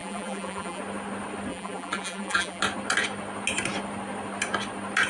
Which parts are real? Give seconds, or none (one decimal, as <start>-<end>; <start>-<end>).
0.8-1.5; 2.6-5.1